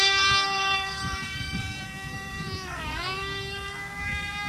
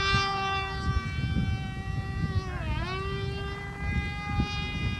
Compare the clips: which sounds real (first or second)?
second